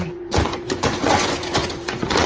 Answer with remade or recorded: remade